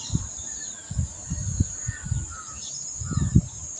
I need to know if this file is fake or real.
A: fake